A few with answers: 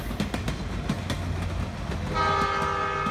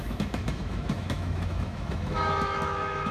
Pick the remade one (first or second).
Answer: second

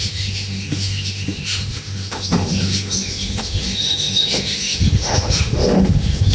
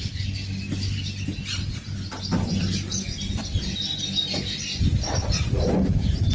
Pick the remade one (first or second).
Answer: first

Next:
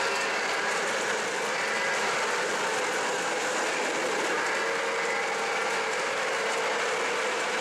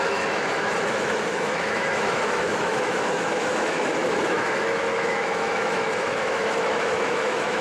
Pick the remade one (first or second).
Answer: second